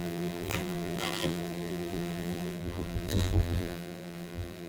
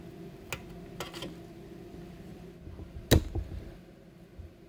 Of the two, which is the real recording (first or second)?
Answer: second